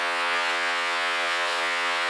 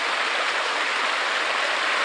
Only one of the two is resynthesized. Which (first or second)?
first